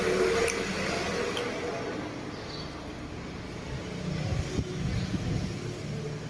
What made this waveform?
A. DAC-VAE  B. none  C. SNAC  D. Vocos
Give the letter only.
B